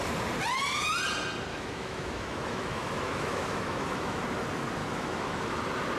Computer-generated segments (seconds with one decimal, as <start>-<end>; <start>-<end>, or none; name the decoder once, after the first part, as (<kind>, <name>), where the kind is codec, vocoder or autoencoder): 1.5-4.2 (autoencoder, DAC-VAE); 4.8-5.6

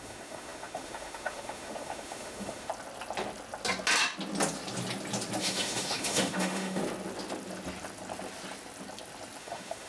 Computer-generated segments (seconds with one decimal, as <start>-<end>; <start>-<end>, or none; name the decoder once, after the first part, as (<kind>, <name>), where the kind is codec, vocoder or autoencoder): 0.0-2.7 (autoencoder, DAC-VAE); 5.4-6.8; 9.4-9.9

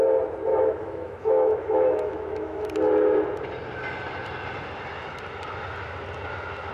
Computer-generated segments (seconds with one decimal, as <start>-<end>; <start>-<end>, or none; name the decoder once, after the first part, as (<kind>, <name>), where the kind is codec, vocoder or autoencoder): 0.5-2.7 (autoencoder, DAC-VAE)

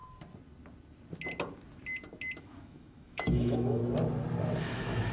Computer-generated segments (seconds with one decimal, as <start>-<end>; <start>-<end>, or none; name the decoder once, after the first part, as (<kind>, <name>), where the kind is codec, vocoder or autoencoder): 2.4-3.8 (autoencoder, DAC-VAE); 4.6-5.1

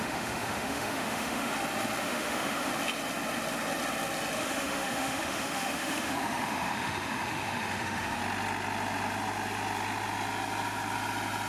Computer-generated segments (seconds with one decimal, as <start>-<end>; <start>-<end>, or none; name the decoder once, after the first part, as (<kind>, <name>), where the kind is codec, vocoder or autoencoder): 0.0-1.5 (autoencoder, DAC-VAE); 2.0-2.7; 4.4-8.2

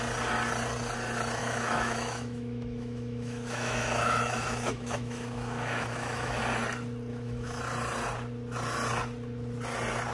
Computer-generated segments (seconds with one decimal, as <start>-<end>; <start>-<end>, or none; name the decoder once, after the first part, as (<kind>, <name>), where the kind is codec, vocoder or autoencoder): 1.4-6.4 (autoencoder, DAC-VAE); 7.1-7.6

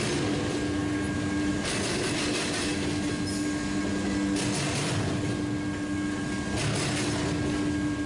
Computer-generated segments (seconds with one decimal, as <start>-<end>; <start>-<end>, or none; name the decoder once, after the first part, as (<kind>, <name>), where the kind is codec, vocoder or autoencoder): none

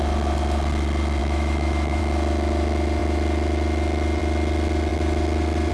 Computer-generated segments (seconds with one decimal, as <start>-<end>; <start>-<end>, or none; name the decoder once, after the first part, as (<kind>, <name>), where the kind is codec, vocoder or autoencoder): 1.2-2.0 (autoencoder, DAC-VAE)